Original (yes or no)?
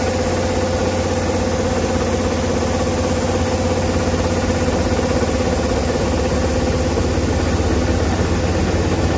yes